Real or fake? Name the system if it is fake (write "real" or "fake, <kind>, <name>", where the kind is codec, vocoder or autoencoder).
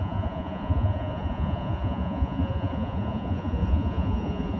fake, vocoder, Vocos